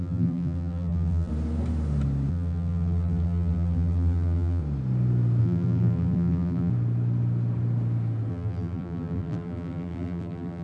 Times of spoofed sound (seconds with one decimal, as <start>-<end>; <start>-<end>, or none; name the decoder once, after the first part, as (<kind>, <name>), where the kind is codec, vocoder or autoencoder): 0.0-1.3 (vocoder, BigVGAN v2); 2.3-4.6; 5.4-6.7; 8.3-10.6